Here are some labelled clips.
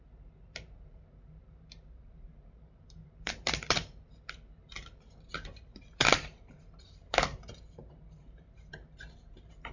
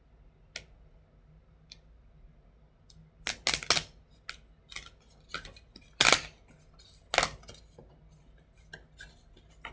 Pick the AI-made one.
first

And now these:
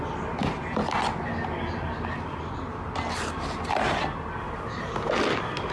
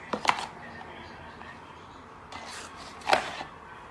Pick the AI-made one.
second